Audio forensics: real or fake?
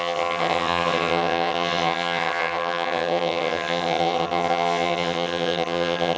fake